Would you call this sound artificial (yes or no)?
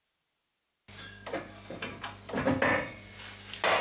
no